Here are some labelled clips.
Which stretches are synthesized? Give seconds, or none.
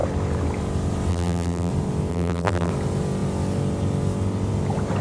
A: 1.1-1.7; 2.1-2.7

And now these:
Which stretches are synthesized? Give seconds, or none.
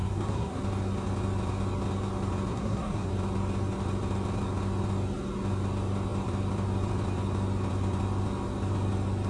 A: 0.0-0.6; 2.5-3.1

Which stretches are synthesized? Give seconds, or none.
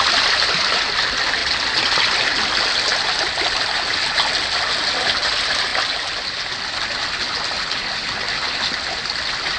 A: none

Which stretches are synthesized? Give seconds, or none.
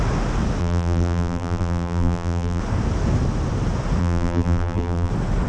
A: 0.6-2.6; 4.0-5.1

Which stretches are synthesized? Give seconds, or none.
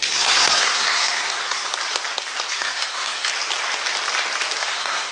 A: 0.0-1.7; 2.5-3.3; 4.6-5.1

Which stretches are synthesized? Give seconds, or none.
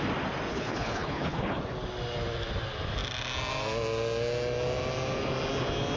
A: 0.5-1.6